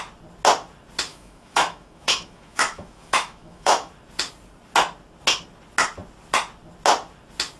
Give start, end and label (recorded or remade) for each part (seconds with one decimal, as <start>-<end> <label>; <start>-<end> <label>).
0.0-1.1 recorded; 1.1-3.9 remade; 3.9-7.6 recorded